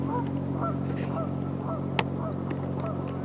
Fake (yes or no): no